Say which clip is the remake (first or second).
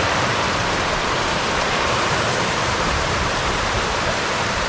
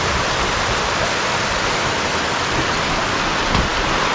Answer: first